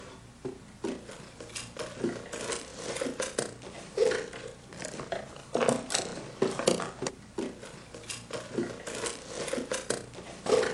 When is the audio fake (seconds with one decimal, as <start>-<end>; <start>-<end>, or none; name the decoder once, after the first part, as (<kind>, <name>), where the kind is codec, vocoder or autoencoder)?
2.7-5.3 (vocoder, BigVGAN v2)